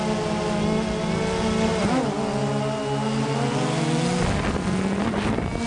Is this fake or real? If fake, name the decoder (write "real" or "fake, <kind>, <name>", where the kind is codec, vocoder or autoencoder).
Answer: real